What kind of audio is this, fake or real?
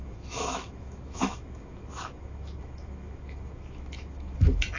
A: fake